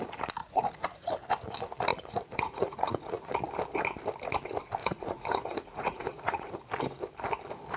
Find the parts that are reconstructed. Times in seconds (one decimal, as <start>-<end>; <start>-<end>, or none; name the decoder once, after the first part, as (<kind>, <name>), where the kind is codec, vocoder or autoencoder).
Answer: 0.4-1.1 (vocoder, Vocos); 1.9-3.3; 4.8-6.5